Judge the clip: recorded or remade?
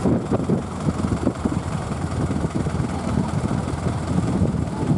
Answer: remade